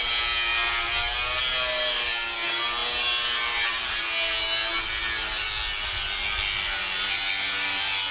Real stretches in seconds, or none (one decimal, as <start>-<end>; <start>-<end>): 0.0-8.1